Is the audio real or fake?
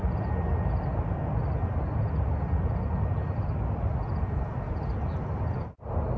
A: real